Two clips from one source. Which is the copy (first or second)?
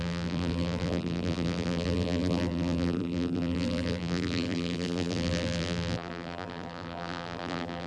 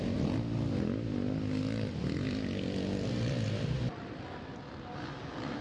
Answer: first